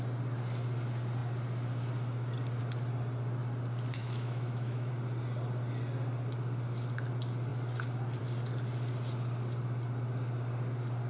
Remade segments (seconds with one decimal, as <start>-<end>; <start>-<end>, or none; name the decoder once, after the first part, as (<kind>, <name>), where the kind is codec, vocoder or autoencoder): 4.0-4.9 (autoencoder, DAC-VAE)